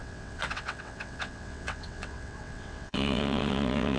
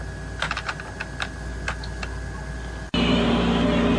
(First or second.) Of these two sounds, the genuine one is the second